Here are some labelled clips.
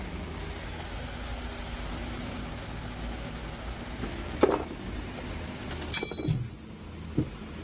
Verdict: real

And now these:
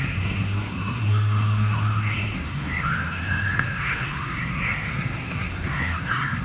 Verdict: fake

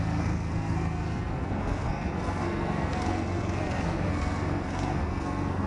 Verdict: fake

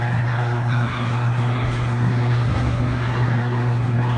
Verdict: fake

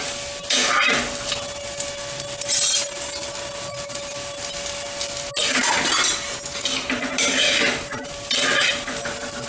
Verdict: real